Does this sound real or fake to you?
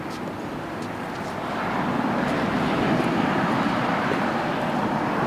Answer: fake